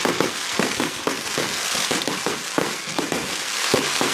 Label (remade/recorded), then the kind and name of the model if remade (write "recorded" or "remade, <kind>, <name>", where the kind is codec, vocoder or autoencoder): remade, codec, SNAC